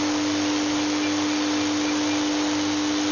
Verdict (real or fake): real